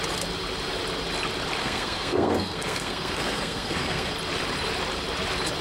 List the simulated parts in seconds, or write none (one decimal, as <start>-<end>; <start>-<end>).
1.6-4.1